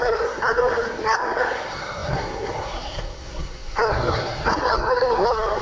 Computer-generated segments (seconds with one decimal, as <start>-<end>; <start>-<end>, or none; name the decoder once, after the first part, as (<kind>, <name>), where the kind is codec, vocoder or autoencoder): 0.0-5.6 (codec, SNAC)